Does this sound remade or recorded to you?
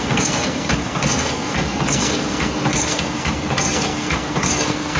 remade